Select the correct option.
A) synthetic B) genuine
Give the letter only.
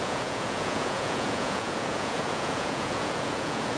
A